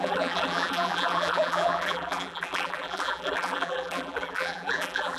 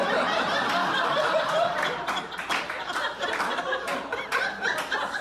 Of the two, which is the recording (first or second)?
second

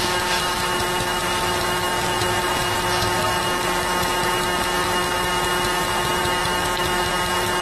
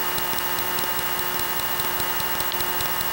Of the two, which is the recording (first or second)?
second